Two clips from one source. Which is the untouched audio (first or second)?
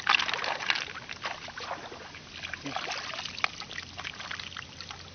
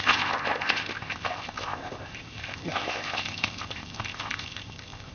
first